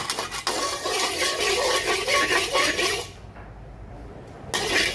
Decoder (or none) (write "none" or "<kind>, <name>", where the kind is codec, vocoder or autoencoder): none